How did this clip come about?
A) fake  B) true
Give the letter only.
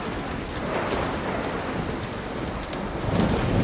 B